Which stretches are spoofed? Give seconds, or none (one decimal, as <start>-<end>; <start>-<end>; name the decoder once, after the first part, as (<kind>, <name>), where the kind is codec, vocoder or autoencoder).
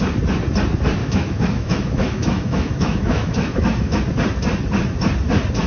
1.0-4.0 (autoencoder, DAC-VAE)